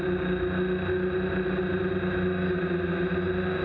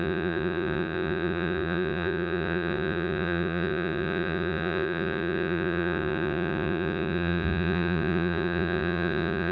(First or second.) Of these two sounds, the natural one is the first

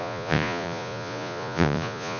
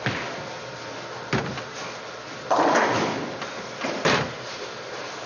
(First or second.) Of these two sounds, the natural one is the second